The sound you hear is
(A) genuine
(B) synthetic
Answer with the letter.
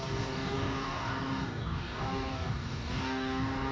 B